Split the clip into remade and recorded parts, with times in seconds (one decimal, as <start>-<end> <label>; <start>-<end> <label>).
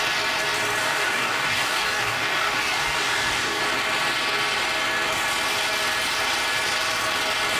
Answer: 0.0-0.8 recorded; 0.8-3.6 remade; 3.6-7.6 recorded